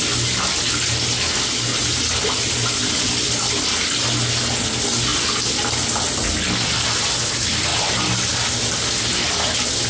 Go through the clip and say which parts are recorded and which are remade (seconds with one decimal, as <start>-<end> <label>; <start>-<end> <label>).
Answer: 0.0-9.9 recorded